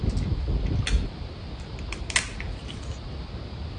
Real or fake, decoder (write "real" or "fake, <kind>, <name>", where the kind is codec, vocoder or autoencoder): real